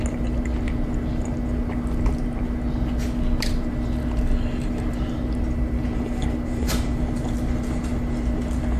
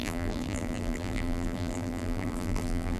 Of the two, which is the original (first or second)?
first